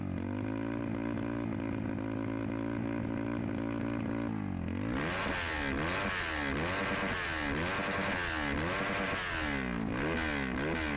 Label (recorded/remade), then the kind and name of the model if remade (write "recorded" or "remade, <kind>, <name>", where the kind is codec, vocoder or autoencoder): recorded